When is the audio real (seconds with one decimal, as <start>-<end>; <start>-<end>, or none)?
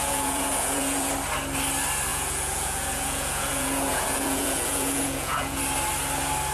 1.1-2.1; 5.6-6.5